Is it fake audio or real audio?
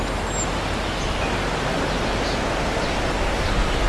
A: real